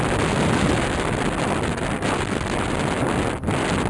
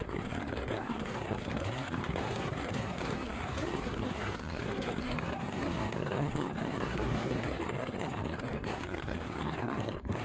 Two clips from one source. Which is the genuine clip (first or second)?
first